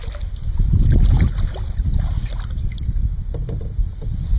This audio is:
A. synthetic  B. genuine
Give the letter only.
B